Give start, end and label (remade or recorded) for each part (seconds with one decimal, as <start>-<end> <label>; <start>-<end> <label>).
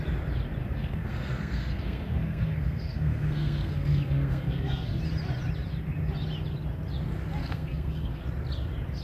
0.0-0.6 recorded; 0.6-5.0 remade; 5.0-7.4 recorded; 7.4-8.2 remade; 8.2-9.0 recorded